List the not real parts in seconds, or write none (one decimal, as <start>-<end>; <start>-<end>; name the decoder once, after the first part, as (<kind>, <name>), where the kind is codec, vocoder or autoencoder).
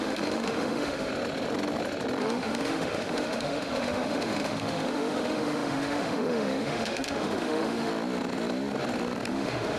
0.0-1.1 (autoencoder, DAC-VAE); 2.2-7.9; 9.3-9.8